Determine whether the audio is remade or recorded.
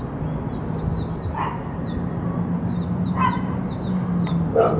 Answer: recorded